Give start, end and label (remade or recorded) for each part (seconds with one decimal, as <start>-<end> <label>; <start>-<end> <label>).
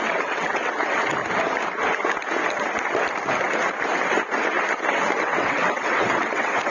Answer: 0.0-1.2 remade; 1.2-5.2 recorded; 5.2-6.7 remade